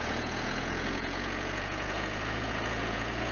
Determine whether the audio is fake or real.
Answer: fake